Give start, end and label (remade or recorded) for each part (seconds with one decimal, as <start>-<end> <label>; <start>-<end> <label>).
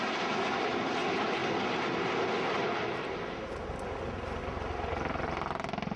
0.0-6.0 recorded